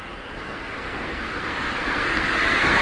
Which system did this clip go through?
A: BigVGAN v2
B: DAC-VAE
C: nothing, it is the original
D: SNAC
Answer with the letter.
D